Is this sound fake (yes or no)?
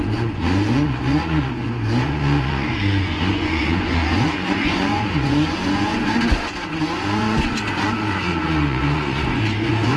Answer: yes